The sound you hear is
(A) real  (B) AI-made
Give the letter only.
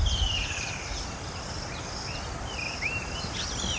A